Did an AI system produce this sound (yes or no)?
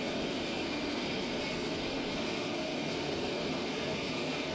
yes